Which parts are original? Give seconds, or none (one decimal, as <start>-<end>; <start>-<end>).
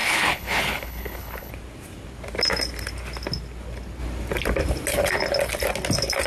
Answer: 1.5-6.3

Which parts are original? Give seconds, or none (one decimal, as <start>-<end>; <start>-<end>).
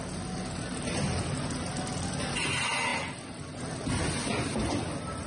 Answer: 0.0-5.3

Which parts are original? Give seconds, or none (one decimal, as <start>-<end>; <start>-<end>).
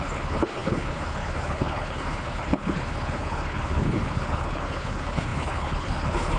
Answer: none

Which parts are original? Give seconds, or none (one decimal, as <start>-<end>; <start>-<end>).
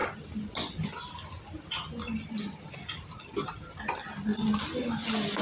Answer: 0.0-5.4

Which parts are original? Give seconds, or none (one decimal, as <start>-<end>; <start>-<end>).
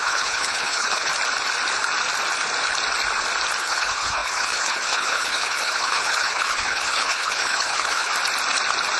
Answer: 1.1-3.6; 8.1-9.0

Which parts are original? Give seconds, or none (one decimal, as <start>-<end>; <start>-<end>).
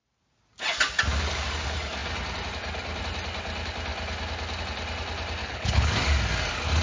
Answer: 0.0-5.4; 5.9-6.8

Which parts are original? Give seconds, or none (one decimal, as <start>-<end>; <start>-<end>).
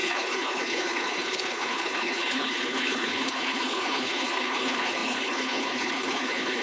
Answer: none